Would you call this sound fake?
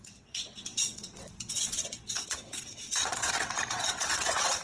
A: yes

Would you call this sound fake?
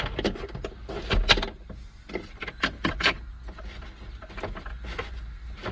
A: no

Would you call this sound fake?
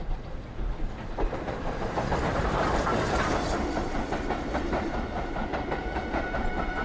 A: no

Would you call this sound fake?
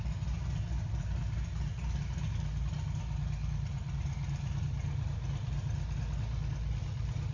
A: no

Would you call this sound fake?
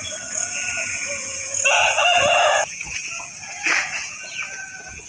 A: yes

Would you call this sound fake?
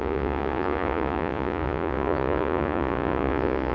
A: yes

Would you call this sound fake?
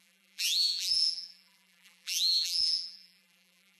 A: yes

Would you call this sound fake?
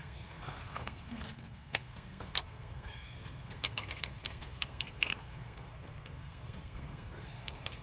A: yes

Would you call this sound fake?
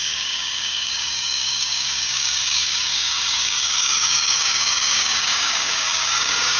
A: yes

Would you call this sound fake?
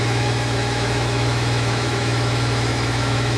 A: yes